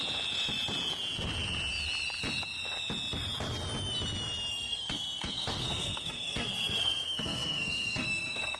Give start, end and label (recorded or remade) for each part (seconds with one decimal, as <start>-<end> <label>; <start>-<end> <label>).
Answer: 0.0-4.5 recorded; 4.5-8.6 remade